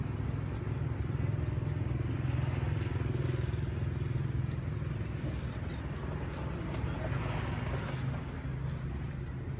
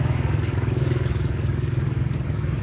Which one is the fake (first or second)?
second